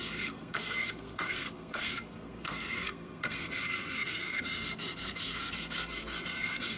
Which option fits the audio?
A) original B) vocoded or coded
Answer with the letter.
B